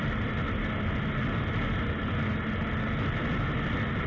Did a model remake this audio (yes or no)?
no